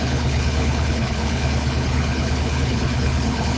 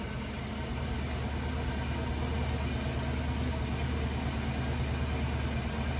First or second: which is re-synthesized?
first